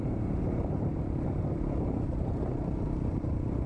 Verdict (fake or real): fake